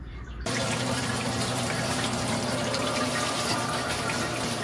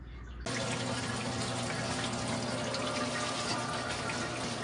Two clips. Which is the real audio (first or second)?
second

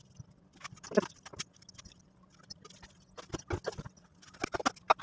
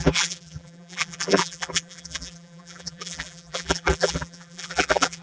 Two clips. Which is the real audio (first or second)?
first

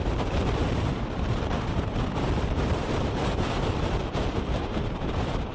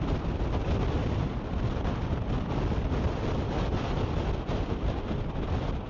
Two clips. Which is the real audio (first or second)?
second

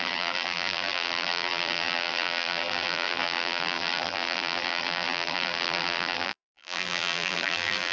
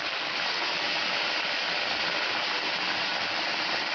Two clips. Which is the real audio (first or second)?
second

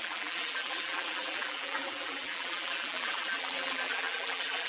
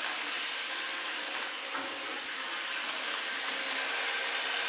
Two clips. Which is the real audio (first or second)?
second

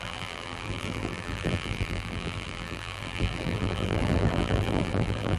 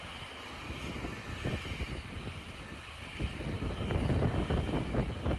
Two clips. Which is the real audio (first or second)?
second